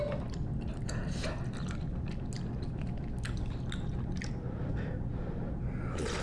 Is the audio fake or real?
real